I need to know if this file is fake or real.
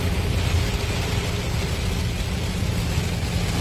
real